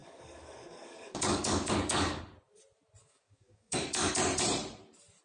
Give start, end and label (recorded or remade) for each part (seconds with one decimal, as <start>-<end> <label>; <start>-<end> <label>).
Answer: 0.0-2.2 remade; 2.2-3.0 recorded; 3.0-4.1 remade; 4.1-5.2 recorded